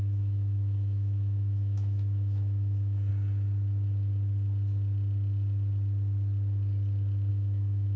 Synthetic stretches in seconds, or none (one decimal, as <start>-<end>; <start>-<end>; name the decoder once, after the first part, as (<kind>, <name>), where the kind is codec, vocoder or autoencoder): 0.0-3.1 (autoencoder, DAC-VAE); 7.3-8.0